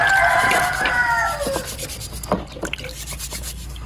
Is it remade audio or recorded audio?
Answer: recorded